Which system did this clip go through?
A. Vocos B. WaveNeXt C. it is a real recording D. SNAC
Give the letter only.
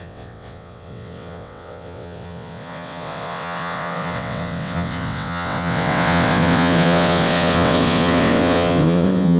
B